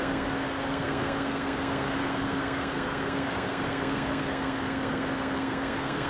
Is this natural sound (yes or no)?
no